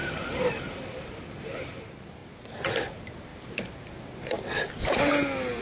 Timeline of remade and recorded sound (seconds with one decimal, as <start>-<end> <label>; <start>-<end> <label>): 0.0-5.6 recorded